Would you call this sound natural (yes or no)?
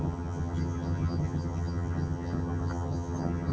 no